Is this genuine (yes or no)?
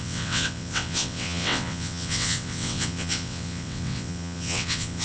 no